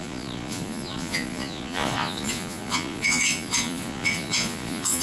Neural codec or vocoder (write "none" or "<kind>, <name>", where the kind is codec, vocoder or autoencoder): vocoder, Vocos